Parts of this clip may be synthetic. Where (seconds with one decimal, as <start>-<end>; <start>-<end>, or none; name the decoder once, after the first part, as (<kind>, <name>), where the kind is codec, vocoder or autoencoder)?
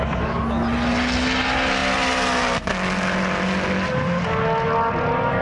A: none